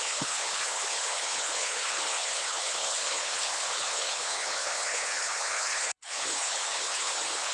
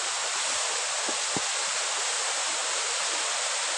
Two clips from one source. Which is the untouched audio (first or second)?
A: second